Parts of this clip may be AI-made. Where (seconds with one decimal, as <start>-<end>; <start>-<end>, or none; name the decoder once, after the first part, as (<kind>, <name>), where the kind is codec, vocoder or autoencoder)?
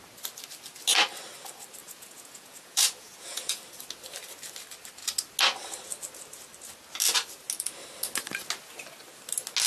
1.8-3.6 (vocoder, Vocos)